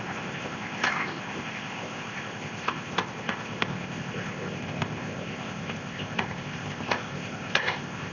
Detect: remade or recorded remade